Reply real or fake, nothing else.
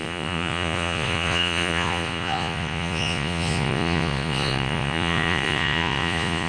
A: fake